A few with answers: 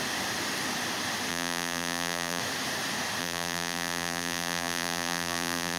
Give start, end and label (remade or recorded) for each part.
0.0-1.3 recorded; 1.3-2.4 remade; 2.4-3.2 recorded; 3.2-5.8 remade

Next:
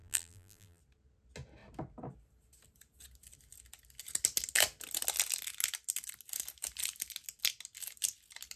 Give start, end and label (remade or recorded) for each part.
0.0-0.8 remade; 0.8-8.6 recorded

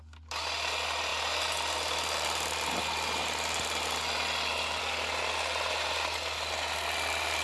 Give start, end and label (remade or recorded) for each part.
0.0-7.4 recorded

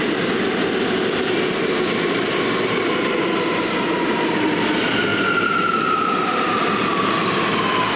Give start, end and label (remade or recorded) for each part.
0.0-5.1 recorded; 5.1-6.4 remade; 6.4-8.0 recorded